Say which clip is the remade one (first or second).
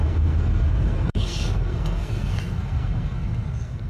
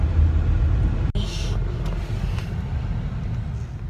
first